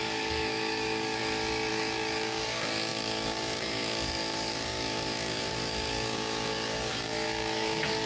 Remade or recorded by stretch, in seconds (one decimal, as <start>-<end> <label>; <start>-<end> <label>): 0.0-1.2 remade; 1.2-1.7 recorded; 1.7-8.1 remade